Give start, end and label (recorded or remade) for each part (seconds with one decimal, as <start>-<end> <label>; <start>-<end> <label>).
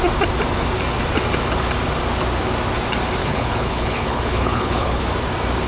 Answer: 0.0-3.2 recorded; 3.2-5.0 remade; 5.0-5.7 recorded